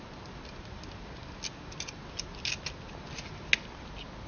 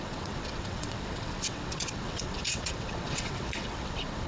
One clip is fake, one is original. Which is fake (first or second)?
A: second